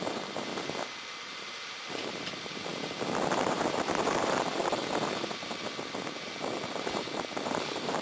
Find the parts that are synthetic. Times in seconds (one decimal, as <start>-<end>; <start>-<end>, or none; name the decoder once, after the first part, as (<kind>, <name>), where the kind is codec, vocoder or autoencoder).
0.0-0.5 (vocoder, BigVGAN v2); 1.1-2.7; 3.4-4.8; 6.2-8.0